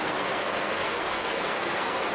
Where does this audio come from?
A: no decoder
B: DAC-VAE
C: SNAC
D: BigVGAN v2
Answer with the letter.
C